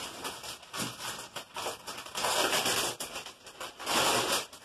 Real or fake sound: real